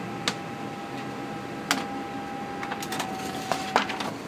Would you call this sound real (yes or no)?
yes